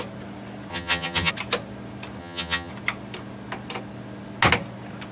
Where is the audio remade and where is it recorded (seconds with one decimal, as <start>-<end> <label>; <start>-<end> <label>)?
0.0-0.7 recorded; 0.7-1.3 remade; 1.3-2.2 recorded; 2.2-2.7 remade; 2.7-5.1 recorded